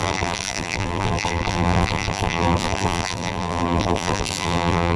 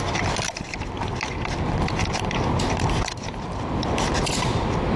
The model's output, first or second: first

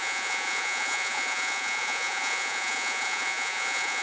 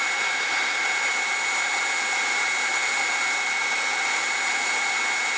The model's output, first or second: first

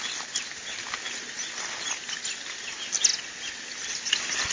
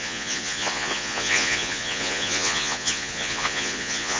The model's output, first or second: second